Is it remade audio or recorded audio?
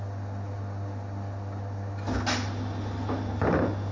recorded